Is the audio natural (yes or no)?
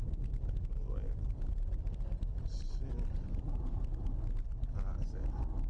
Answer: no